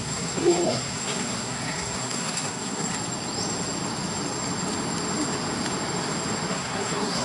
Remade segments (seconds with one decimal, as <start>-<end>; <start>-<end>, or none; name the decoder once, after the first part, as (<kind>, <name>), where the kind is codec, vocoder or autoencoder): 0.0-2.9 (codec, SNAC); 6.5-7.2